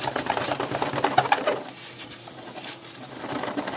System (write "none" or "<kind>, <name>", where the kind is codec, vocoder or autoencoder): vocoder, BigVGAN v2